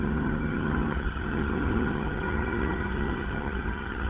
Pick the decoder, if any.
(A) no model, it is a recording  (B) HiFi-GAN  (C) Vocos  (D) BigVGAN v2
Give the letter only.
B